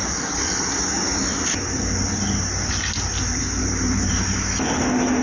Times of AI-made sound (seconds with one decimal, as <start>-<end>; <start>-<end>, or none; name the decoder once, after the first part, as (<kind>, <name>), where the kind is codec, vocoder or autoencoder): 3.6-4.7 (vocoder, BigVGAN v2)